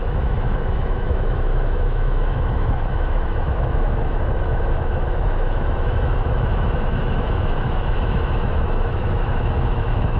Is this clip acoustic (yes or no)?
no